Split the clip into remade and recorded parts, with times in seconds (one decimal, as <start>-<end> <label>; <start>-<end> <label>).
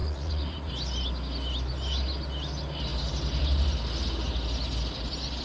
0.0-0.7 remade; 0.7-5.4 recorded